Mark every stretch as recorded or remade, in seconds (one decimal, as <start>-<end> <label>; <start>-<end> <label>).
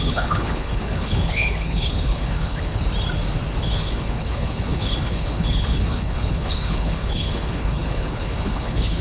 0.0-2.8 remade; 2.8-3.6 recorded; 3.6-9.0 remade